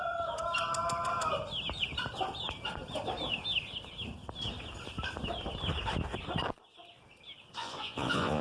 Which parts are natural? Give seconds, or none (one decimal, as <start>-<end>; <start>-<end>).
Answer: 0.0-7.6